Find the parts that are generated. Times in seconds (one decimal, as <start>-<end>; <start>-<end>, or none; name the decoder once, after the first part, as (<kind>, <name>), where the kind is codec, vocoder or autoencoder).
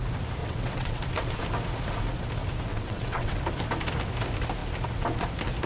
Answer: 0.4-1.0 (vocoder, WaveNeXt); 2.7-3.4